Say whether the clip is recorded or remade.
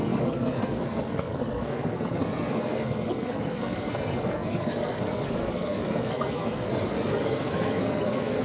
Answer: remade